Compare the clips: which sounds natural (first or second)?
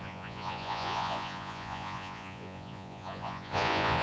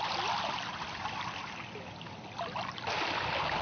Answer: second